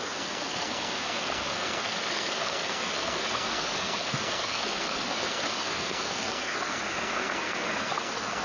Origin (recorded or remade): remade